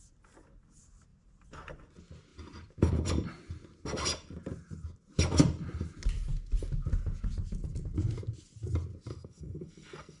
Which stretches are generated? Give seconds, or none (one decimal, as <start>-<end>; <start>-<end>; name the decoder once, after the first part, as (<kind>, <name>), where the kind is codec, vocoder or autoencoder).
9.1-10.2 (codec, SNAC)